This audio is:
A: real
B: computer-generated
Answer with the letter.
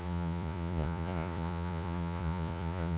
B